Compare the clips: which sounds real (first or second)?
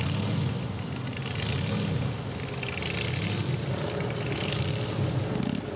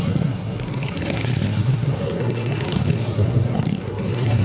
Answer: first